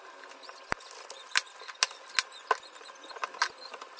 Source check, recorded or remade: recorded